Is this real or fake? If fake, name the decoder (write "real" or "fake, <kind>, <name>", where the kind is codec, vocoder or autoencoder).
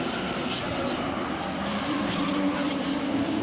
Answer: real